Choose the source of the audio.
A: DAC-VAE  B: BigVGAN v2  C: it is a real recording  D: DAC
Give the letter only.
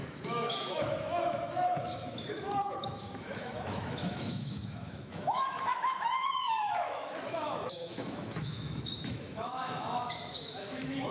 A